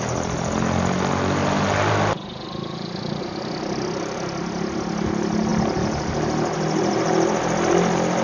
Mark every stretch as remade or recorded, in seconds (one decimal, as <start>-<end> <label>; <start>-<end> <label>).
0.0-8.2 recorded